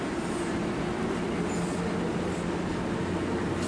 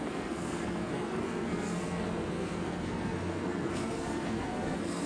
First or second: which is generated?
second